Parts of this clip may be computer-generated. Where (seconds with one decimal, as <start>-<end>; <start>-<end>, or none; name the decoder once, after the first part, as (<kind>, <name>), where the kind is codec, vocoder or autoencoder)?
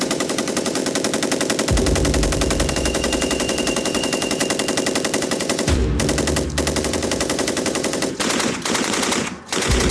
0.0-0.8 (vocoder, Vocos); 2.7-4.4; 5.2-5.8; 6.8-9.9